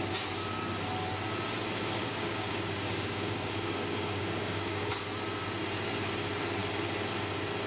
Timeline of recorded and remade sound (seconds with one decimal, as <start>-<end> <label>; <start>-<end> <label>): 0.0-2.0 recorded; 2.0-4.9 remade; 4.9-7.7 recorded